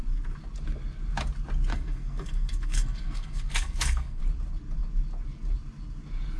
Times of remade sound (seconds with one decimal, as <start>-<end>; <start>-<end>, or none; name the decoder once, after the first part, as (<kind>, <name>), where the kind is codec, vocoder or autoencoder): 1.7-4.2 (codec, SNAC)

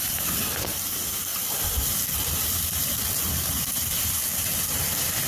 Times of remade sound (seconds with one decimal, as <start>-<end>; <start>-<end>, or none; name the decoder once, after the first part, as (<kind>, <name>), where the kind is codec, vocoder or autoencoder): 1.3-3.1 (vocoder, BigVGAN v2)

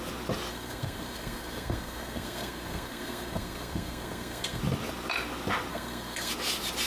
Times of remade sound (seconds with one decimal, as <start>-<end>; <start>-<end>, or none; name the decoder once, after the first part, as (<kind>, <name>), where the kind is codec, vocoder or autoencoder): 0.5-4.6 (codec, SNAC); 5.7-6.3

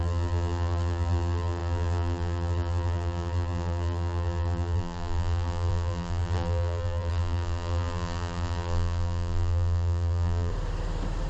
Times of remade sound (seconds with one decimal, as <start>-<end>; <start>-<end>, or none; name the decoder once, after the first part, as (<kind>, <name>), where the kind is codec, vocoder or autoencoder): 0.0-10.5 (vocoder, BigVGAN v2)

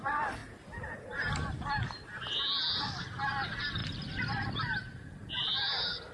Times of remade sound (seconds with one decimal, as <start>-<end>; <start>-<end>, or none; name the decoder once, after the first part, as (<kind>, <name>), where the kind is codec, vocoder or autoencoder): none

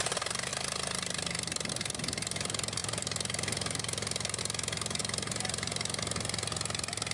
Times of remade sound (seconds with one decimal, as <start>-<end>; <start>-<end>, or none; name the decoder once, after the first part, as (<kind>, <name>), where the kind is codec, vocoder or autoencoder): 2.8-4.4 (vocoder, BigVGAN v2)

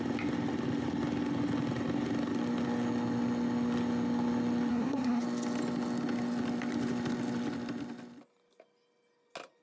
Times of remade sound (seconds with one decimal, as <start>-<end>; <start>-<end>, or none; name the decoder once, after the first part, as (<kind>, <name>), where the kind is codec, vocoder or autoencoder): 4.7-5.2 (codec, SNAC)

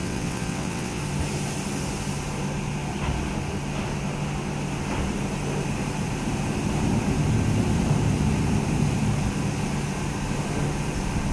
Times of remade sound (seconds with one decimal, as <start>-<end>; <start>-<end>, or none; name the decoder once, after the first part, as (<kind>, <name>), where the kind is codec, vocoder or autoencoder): 0.0-1.0 (vocoder, WaveNeXt)